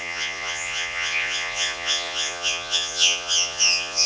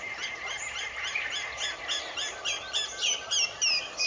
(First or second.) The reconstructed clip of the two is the first